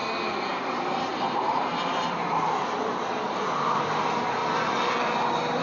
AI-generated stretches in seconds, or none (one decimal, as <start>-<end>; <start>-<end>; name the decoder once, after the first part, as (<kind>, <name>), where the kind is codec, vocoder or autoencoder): 0.5-4.4 (vocoder, BigVGAN v2)